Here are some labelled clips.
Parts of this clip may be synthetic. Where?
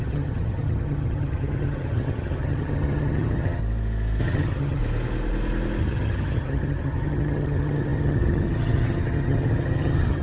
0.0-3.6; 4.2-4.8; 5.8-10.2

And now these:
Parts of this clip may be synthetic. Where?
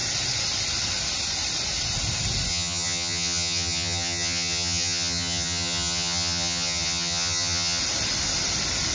2.5-7.8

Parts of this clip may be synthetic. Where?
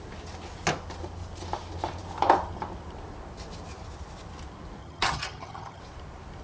4.8-5.8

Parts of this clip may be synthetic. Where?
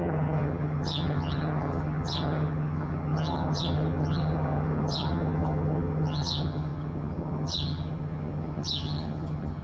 0.0-9.6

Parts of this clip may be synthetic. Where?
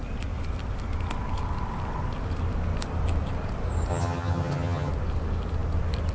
3.9-4.9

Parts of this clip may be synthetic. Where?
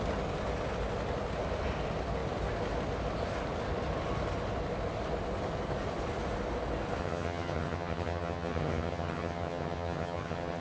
7.0-10.6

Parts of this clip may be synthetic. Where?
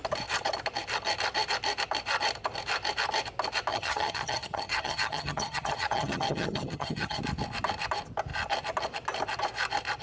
3.7-7.2